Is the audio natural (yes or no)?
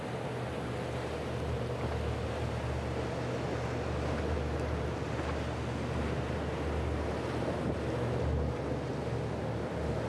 yes